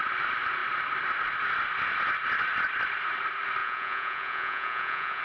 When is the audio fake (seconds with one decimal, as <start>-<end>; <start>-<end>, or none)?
3.6-5.2